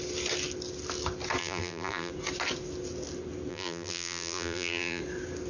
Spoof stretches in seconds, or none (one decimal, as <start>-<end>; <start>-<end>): 1.4-2.1; 3.5-5.0